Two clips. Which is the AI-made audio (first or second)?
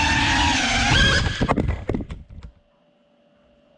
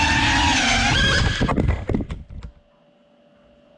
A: first